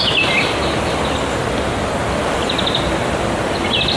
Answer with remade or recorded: recorded